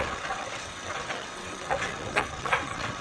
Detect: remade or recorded remade